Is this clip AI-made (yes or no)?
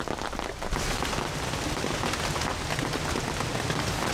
no